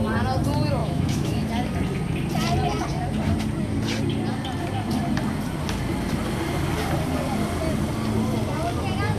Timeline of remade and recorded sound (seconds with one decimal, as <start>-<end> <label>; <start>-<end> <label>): 0.0-0.8 recorded; 0.8-1.5 remade; 1.5-9.2 recorded